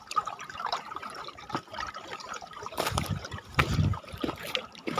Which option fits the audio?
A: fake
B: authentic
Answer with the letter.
A